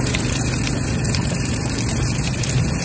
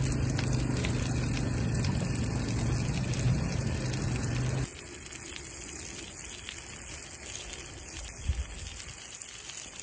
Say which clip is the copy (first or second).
first